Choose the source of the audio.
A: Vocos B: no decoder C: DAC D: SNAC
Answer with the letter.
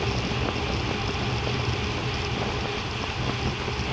B